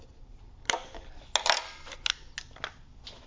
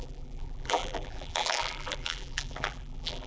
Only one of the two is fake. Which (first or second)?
second